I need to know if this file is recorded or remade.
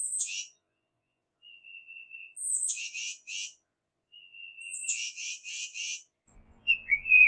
remade